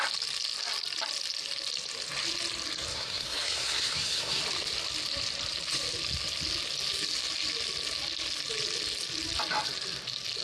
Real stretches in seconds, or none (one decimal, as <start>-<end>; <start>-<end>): 0.0-2.9; 4.4-10.4